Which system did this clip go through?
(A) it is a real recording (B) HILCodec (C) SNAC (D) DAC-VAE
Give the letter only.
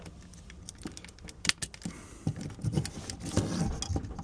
A